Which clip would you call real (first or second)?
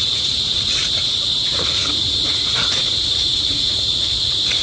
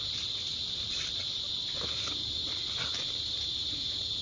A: second